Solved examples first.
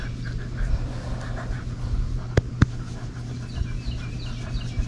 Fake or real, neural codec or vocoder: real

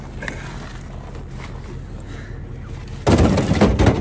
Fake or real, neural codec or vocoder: real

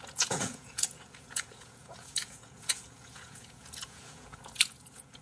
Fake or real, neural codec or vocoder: fake, vocoder, Vocos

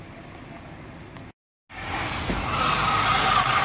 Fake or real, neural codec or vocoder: real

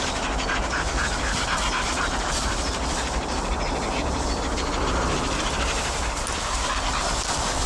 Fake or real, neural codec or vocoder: real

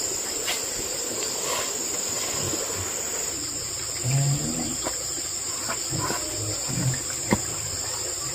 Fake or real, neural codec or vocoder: real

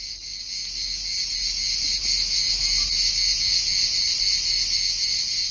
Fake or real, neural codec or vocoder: real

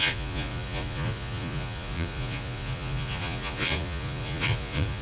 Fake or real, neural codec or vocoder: fake, vocoder, Vocos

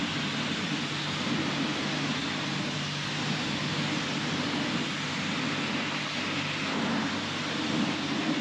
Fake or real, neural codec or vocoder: real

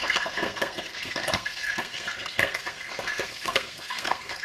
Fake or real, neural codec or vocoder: fake, codec, SNAC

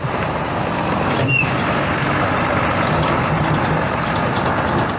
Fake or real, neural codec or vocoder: real